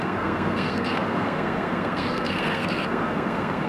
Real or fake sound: fake